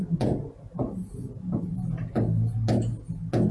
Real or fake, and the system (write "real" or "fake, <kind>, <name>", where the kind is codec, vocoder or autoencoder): real